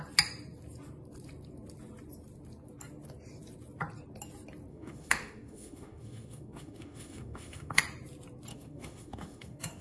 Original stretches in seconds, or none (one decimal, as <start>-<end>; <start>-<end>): 0.0-4.7; 7.8-8.5

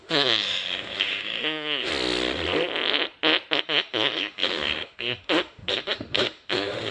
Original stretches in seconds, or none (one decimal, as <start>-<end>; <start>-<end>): 1.9-3.6

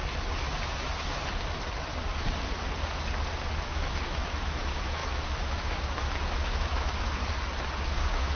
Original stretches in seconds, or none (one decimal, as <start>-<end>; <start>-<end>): 0.0-3.6; 7.2-8.0

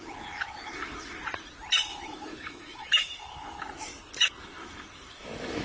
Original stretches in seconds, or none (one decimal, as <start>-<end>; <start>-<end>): 1.2-1.9; 3.9-4.4

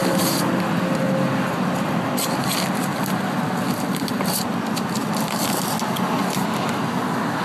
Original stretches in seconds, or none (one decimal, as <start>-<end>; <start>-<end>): 0.0-7.4

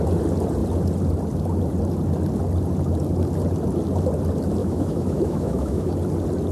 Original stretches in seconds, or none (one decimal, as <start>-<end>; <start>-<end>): 0.0-4.6; 5.9-6.5

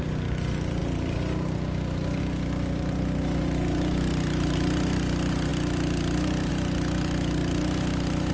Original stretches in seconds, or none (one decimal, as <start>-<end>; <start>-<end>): 0.0-8.3